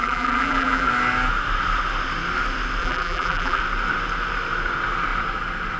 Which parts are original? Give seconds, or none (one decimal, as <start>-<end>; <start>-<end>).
0.9-2.8; 3.6-5.8